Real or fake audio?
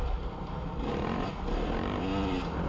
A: real